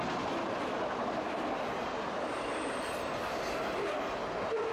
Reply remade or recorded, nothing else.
recorded